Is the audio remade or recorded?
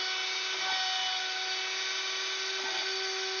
recorded